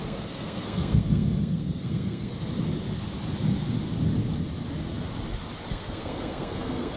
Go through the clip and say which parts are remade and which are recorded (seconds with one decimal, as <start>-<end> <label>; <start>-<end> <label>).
0.0-2.3 remade; 2.3-5.7 recorded; 5.7-7.0 remade